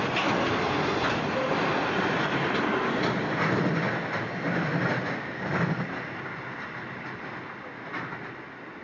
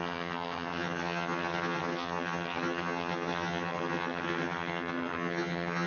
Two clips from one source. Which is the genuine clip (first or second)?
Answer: first